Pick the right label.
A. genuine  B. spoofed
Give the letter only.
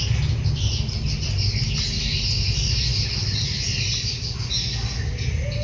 A